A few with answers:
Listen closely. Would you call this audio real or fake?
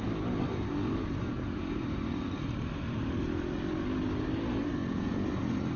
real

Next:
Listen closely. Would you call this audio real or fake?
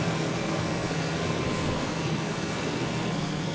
fake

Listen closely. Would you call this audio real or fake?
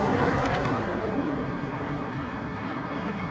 fake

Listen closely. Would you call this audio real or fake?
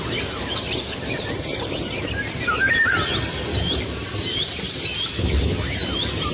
real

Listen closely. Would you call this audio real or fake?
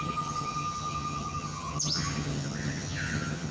fake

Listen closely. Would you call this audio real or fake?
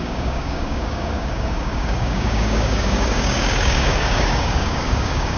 fake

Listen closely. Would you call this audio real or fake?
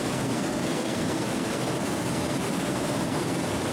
fake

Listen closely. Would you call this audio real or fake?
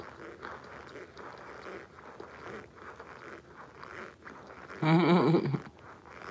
real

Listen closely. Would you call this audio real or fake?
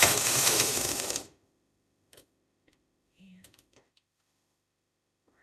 fake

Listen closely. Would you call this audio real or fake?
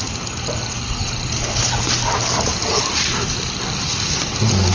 real